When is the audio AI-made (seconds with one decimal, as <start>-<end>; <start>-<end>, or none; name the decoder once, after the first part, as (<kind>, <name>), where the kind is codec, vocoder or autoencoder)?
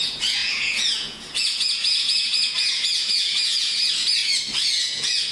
0.0-4.2 (vocoder, Vocos); 4.7-5.3